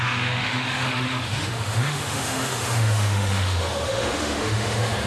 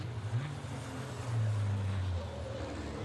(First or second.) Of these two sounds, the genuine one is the second